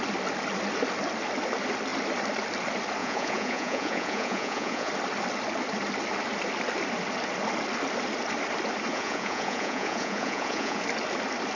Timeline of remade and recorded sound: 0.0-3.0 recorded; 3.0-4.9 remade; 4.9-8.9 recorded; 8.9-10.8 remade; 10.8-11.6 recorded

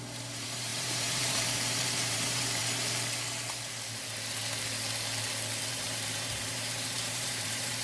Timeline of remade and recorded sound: 0.0-2.6 remade; 2.6-5.7 recorded; 5.7-7.8 remade

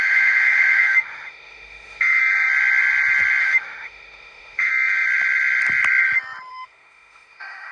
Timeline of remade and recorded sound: 0.0-2.2 remade; 2.2-3.4 recorded; 3.4-4.7 remade; 4.7-6.5 recorded; 6.5-7.7 remade

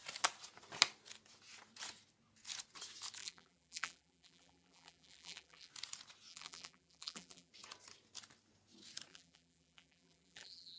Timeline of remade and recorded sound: 0.0-3.2 recorded; 3.2-5.7 remade; 5.7-6.3 recorded; 6.3-7.5 remade; 7.5-9.1 recorded; 9.1-10.8 remade

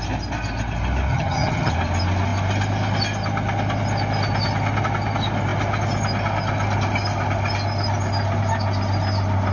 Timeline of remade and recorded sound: 0.0-1.1 recorded; 1.1-1.7 remade; 1.7-9.5 recorded

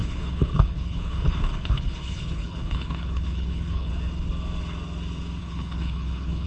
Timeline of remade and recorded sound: 0.0-3.9 remade; 3.9-5.4 recorded; 5.4-6.5 remade

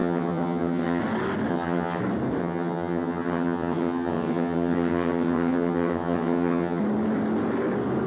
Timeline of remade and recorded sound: 0.0-1.0 remade; 1.0-1.5 recorded; 1.5-2.0 remade; 2.0-2.4 recorded; 2.4-6.8 remade; 6.8-8.1 recorded